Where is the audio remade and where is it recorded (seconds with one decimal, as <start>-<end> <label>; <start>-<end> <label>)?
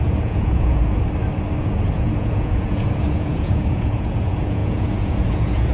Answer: 0.0-0.8 remade; 0.8-1.6 recorded; 1.6-5.7 remade